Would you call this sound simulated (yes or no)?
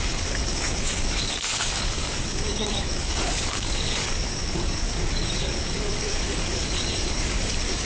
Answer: yes